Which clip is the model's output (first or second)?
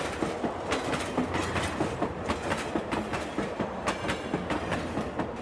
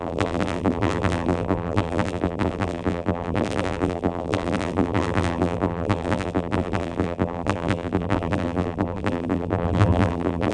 second